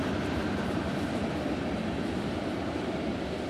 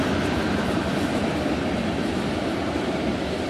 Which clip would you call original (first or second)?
second